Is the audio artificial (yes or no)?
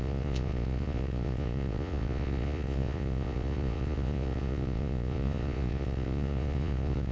yes